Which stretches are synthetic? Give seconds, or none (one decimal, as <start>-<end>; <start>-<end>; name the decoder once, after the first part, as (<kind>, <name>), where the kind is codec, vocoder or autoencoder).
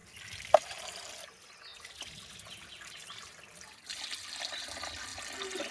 none